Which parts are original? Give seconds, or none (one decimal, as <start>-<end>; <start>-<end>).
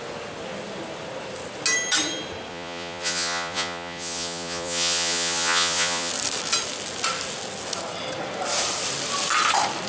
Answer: 0.0-2.5; 6.1-9.9